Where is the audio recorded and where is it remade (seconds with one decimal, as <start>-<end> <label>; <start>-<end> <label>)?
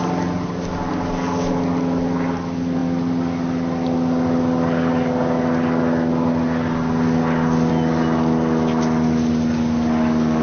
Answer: 0.0-10.4 recorded